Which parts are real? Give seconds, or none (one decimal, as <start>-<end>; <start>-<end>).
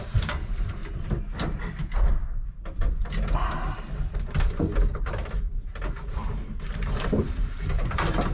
0.8-3.5